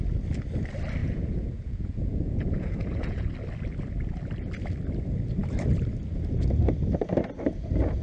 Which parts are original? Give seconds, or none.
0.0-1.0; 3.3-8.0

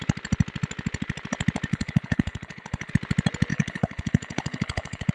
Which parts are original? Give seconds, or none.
0.0-1.7; 2.9-3.5